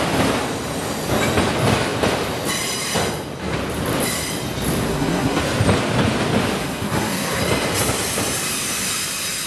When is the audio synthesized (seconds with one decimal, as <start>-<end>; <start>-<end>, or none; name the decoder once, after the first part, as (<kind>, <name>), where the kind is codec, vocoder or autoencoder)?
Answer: 4.9-5.4 (codec, SNAC); 6.6-7.4